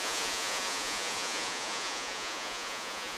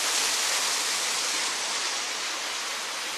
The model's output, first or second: first